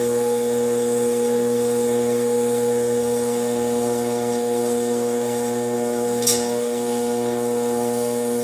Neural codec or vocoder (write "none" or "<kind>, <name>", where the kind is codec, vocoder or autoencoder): codec, SNAC